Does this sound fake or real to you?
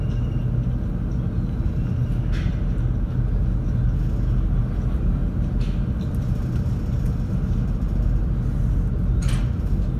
real